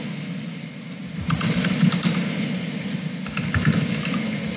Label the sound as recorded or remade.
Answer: recorded